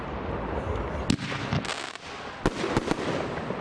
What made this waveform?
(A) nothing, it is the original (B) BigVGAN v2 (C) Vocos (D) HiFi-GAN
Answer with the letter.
A